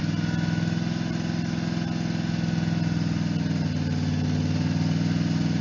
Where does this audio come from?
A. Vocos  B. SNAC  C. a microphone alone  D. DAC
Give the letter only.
C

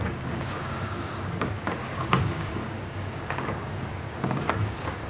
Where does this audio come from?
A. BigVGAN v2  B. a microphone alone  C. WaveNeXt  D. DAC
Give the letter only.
D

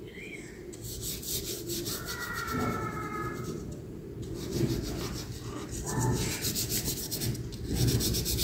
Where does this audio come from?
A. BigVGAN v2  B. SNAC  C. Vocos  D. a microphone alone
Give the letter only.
D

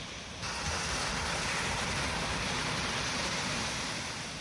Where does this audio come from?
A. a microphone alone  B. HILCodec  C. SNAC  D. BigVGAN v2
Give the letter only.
A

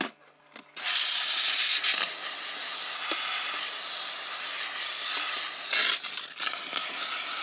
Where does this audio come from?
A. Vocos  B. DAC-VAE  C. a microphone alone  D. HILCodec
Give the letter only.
C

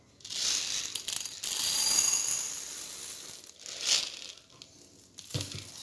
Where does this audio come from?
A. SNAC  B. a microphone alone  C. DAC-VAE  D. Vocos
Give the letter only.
B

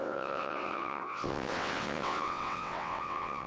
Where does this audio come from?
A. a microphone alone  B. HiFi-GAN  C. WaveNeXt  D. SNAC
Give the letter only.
C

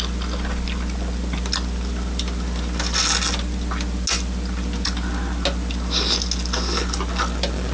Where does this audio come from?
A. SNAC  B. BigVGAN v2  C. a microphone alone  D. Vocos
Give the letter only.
C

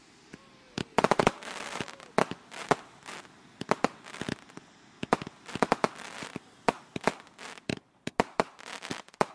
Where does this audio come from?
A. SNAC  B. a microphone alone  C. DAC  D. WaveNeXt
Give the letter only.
B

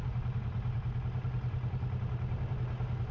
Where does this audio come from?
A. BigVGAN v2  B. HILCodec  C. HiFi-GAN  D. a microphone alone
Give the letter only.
D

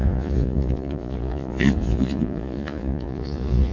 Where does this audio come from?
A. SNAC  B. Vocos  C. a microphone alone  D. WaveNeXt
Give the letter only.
B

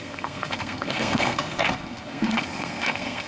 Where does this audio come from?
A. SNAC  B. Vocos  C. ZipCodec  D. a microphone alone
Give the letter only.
A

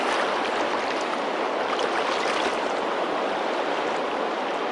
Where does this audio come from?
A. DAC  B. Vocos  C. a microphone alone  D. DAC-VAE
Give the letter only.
C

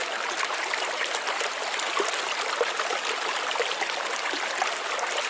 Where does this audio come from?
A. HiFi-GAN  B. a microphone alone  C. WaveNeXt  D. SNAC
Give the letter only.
B